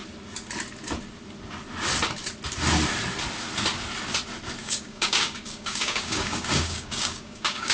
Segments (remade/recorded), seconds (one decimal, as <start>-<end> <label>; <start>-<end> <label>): 0.0-4.6 recorded; 4.6-7.7 remade